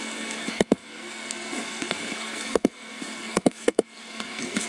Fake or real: fake